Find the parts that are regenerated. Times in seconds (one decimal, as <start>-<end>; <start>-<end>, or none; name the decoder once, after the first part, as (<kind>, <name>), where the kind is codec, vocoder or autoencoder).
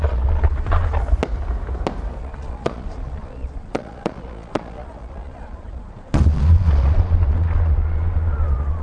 0.0-1.0 (vocoder, Vocos); 2.2-8.8